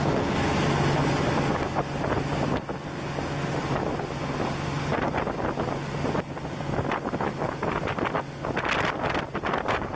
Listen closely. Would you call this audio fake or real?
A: real